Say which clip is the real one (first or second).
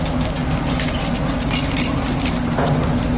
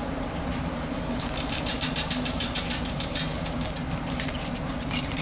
first